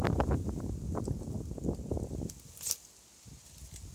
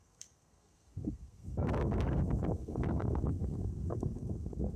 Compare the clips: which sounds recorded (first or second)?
first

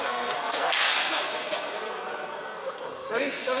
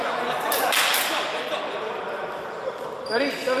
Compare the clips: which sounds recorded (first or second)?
second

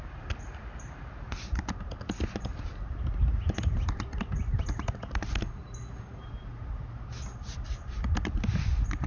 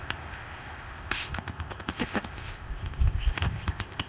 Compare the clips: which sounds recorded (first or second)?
first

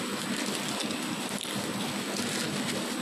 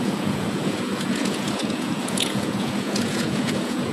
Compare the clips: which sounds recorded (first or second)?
first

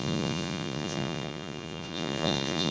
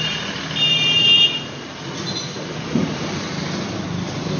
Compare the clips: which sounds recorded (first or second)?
second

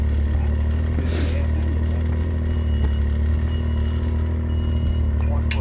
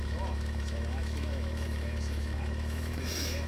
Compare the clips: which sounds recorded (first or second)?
first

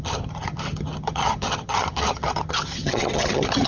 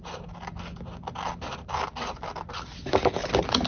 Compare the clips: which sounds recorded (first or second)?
second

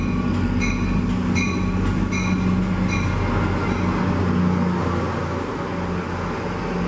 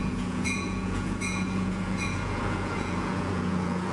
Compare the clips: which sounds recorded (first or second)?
first